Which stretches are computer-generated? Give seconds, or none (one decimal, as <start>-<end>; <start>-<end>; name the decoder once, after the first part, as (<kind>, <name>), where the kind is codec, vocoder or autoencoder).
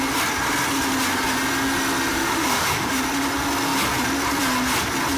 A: 2.1-3.0 (autoencoder, DAC-VAE)